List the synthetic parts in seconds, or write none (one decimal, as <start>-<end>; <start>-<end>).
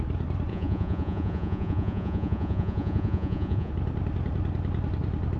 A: 0.5-3.7